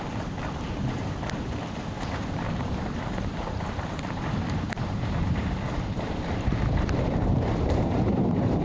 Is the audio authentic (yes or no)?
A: no